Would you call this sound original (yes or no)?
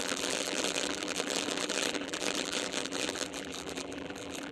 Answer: no